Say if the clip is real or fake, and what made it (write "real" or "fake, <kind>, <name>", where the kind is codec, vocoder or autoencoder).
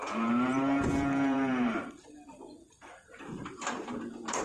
fake, vocoder, BigVGAN v2